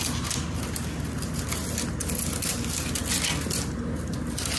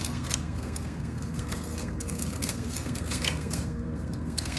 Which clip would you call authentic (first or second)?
first